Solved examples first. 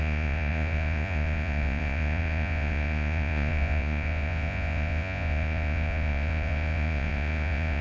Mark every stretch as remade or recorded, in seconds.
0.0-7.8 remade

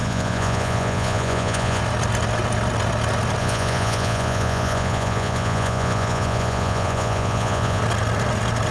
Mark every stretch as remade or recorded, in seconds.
0.0-1.8 remade; 1.8-3.4 recorded; 3.4-7.8 remade; 7.8-8.7 recorded

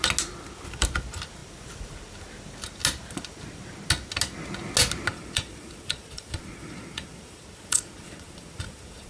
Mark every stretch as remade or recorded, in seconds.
0.0-5.1 recorded; 5.1-9.1 remade

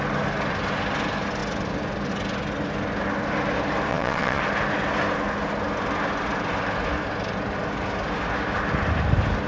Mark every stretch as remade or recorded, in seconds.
0.0-3.9 recorded; 3.9-4.4 remade; 4.4-9.5 recorded

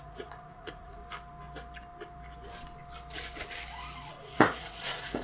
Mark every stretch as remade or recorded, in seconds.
0.0-1.0 remade; 1.0-4.1 recorded; 4.1-5.2 remade

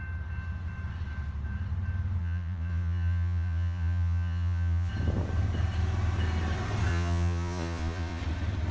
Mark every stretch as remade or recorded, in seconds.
0.0-2.2 recorded; 2.2-4.9 remade; 4.9-6.9 recorded; 6.9-8.2 remade; 8.2-8.7 recorded

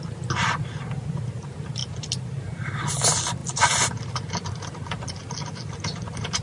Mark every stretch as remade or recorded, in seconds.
0.0-6.4 recorded